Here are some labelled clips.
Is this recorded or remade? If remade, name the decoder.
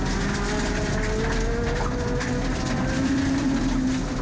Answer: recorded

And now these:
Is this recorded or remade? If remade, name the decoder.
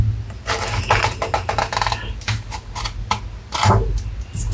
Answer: recorded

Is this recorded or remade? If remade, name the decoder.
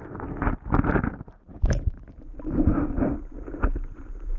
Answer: recorded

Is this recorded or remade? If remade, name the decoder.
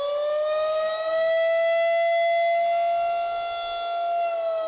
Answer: recorded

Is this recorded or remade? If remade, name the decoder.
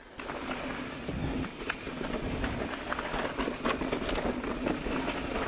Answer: recorded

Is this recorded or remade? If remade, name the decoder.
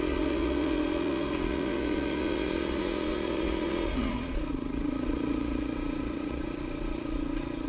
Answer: remade, vocoder, Vocos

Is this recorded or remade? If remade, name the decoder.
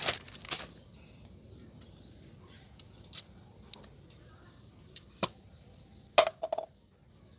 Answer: recorded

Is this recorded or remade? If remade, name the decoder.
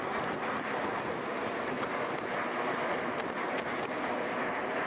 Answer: recorded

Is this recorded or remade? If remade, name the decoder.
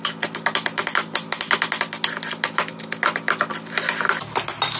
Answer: recorded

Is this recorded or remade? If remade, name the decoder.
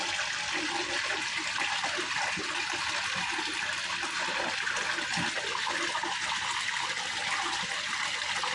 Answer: recorded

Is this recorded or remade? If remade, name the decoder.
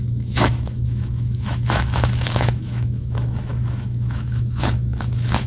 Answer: remade, autoencoder, DAC-VAE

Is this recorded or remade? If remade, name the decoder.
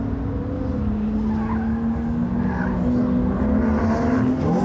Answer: recorded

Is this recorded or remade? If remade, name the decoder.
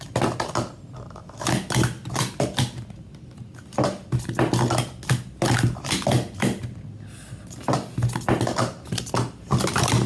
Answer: recorded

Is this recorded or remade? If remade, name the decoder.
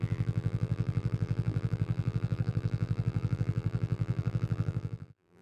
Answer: remade, vocoder, BigVGAN v2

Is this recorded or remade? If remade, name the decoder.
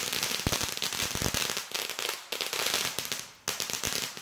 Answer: recorded